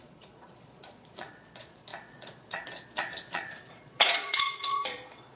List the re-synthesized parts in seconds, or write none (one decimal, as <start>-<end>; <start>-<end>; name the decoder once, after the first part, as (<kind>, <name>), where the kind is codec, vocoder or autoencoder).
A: 0.0-5.4 (vocoder, Vocos)